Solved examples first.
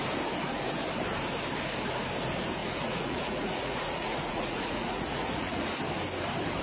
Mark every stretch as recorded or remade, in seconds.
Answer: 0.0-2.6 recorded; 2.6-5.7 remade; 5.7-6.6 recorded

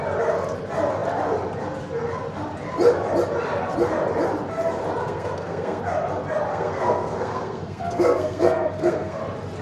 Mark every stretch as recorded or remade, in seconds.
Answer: 0.0-5.0 recorded; 5.0-5.8 remade; 5.8-6.5 recorded; 6.5-9.2 remade; 9.2-9.6 recorded